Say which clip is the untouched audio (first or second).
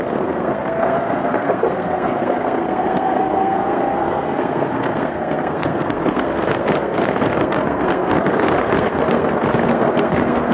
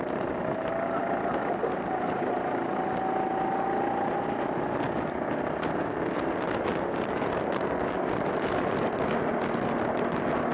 second